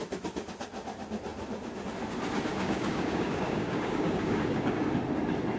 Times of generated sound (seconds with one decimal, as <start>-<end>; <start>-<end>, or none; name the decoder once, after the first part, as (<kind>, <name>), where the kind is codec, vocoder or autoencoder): 2.5-4.8 (codec, DAC)